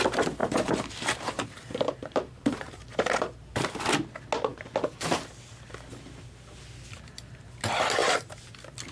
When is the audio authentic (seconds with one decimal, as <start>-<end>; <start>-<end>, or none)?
0.0-0.4; 3.8-8.0; 8.5-8.9